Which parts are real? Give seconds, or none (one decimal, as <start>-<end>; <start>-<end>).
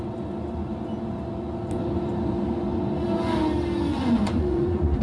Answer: 0.0-3.9